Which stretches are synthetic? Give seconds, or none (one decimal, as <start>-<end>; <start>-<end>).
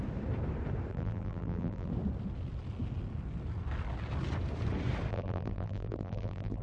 0.9-1.9; 5.1-6.6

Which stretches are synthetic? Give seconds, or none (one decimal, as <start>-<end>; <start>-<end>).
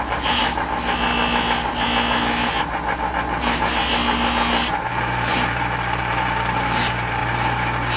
0.0-0.4; 4.9-7.2